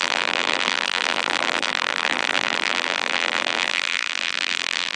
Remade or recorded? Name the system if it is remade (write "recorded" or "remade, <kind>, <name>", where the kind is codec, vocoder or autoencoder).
remade, vocoder, BigVGAN v2